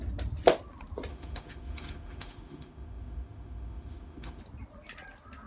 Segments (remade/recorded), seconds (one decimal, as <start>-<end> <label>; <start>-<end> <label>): 0.0-1.1 recorded; 1.1-4.4 remade; 4.4-5.5 recorded